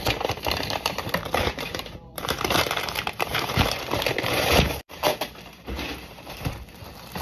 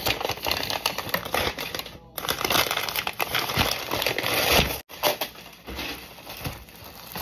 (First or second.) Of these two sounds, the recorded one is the second